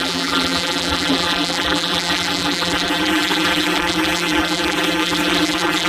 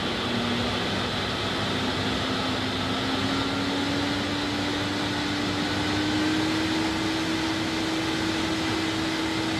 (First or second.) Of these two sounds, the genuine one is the second